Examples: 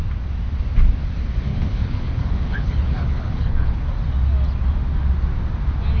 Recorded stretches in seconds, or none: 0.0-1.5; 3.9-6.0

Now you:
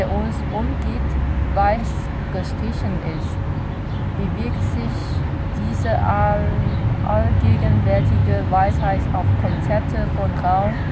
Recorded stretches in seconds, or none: 0.0-1.8; 2.3-8.2; 8.7-10.9

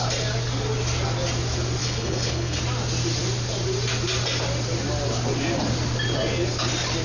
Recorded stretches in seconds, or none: 0.0-1.8; 2.6-7.0

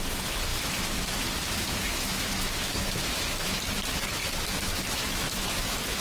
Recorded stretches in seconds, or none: none

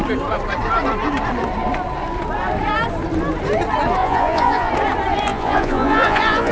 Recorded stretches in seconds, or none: 0.0-4.0; 4.7-5.3

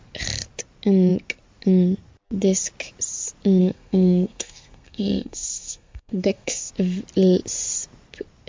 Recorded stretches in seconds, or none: 0.0-3.6; 6.7-8.5